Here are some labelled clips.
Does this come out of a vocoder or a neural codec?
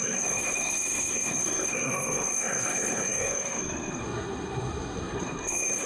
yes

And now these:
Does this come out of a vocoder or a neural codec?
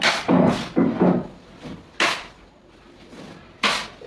no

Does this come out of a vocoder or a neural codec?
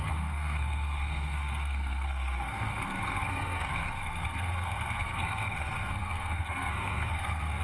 yes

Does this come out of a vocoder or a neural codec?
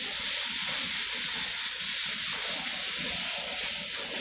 no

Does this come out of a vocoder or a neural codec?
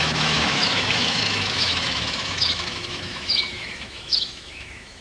yes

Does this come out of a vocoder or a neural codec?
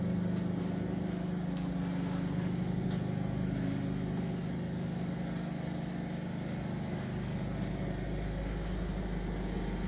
no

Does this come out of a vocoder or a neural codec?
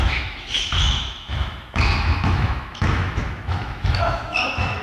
yes